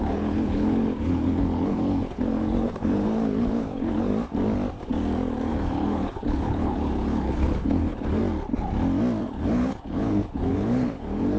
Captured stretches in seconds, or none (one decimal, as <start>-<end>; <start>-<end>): 4.1-5.5; 8.2-9.2